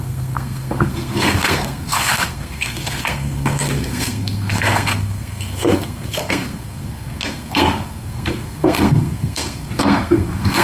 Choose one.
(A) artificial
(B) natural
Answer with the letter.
A